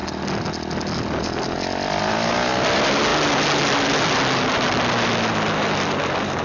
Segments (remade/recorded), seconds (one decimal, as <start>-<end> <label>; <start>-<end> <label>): 0.0-6.4 recorded